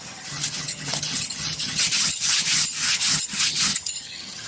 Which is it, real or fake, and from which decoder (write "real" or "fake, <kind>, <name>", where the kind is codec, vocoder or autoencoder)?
fake, vocoder, HiFi-GAN